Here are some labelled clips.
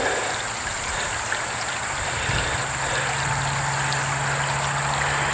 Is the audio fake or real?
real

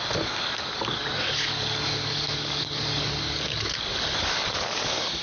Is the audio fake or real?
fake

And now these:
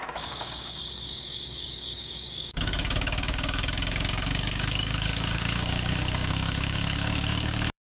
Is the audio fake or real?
fake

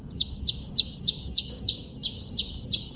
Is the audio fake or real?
fake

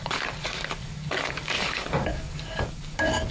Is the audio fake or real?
fake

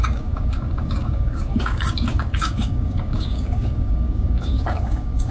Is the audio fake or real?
fake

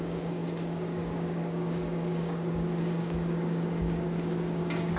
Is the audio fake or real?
fake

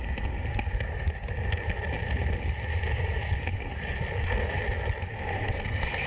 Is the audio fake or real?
real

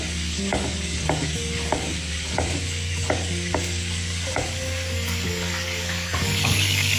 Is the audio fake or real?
fake